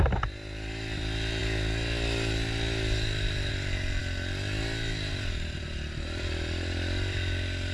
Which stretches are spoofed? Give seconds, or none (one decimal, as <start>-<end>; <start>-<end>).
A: 0.0-4.0; 5.1-7.7